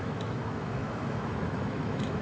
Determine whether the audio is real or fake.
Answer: fake